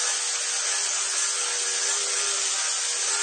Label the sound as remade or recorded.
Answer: recorded